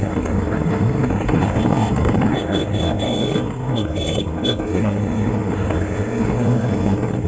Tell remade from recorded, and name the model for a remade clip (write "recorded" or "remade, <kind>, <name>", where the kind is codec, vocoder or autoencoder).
remade, codec, SNAC